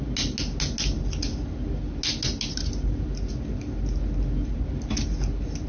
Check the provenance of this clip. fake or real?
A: real